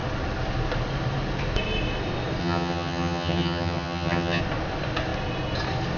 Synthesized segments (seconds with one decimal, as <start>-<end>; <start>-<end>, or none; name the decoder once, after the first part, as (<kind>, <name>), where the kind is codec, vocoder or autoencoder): 2.4-4.4 (vocoder, HiFi-GAN)